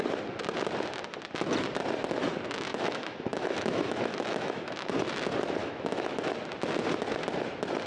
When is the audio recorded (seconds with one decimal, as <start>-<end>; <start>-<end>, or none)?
0.0-2.7; 4.9-5.6; 6.3-7.9